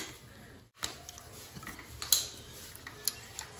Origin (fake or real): real